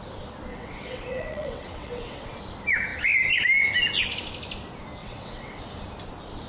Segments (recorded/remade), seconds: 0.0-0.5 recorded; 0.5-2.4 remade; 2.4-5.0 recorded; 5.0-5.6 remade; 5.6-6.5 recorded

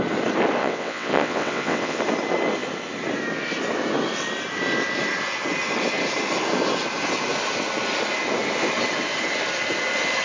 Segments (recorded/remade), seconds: 0.0-0.6 recorded; 0.6-2.0 remade; 2.0-10.2 recorded

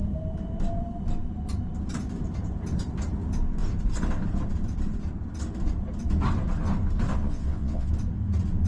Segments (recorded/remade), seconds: 0.0-7.1 recorded; 7.1-7.9 remade; 7.9-8.7 recorded